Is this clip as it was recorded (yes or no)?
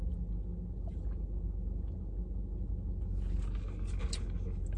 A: yes